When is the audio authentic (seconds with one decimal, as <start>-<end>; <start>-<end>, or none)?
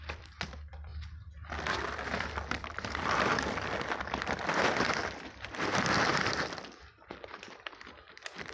0.9-1.8